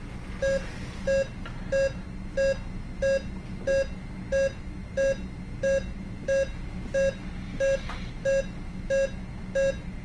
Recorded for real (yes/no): yes